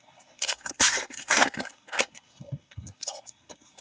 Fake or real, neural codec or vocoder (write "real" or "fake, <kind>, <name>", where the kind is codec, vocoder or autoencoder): fake, codec, SNAC